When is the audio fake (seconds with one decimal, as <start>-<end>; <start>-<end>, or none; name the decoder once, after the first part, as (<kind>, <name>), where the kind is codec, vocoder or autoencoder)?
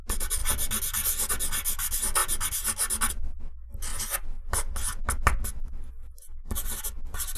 none